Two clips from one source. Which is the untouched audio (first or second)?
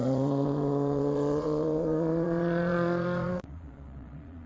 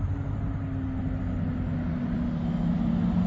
second